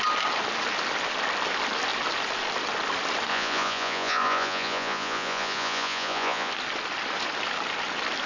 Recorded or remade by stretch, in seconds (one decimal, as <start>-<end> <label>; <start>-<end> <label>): 0.0-3.3 recorded; 3.3-6.5 remade; 6.5-8.3 recorded